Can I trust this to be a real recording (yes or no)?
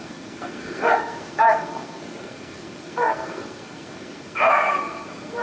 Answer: no